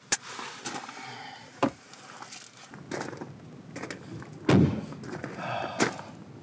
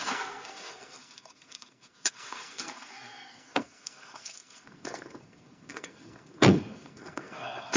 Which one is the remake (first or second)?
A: second